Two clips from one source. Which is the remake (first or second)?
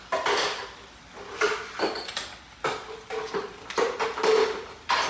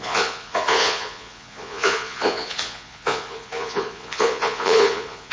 second